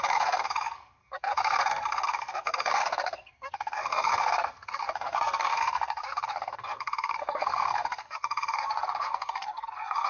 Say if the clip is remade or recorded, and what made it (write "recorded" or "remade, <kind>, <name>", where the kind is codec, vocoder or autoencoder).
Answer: remade, codec, SNAC